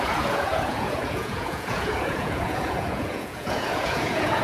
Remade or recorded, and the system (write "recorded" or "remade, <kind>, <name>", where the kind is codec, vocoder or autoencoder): remade, vocoder, Vocos